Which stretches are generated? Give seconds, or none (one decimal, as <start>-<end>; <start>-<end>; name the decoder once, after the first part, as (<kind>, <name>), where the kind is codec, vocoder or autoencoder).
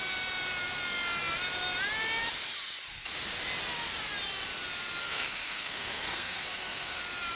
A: 5.0-7.0 (codec, SNAC)